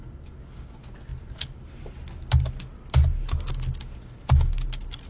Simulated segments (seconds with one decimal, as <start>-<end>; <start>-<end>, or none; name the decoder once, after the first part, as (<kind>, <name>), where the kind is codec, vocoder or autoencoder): none